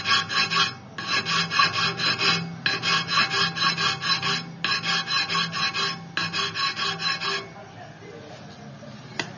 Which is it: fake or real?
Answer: real